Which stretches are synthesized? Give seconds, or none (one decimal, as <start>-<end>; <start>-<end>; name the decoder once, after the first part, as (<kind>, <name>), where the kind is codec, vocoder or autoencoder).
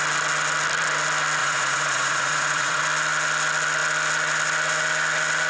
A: 1.4-2.8 (vocoder, Vocos)